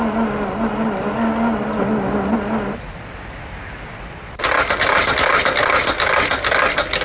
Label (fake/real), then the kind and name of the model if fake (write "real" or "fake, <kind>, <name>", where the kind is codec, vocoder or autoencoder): real